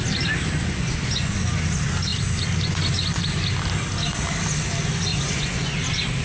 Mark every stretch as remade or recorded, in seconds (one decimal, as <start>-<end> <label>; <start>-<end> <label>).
0.0-0.6 recorded; 0.6-1.4 remade; 1.4-5.1 recorded; 5.1-5.8 remade; 5.8-6.2 recorded